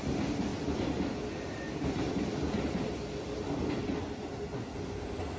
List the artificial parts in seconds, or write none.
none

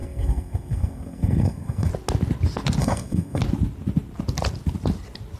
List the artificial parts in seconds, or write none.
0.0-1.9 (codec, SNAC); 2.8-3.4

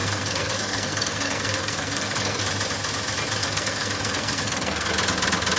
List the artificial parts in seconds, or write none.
0.0-2.4 (codec, SNAC); 3.4-4.9

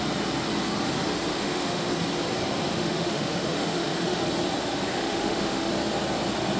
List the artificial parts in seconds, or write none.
1.3-1.9 (autoencoder, DAC-VAE); 2.7-4.2; 4.9-5.7

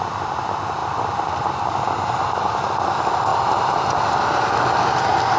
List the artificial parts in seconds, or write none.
0.8-1.7 (vocoder, BigVGAN v2)

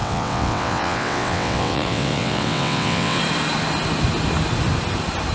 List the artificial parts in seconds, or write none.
0.0-3.2 (vocoder, WaveNeXt)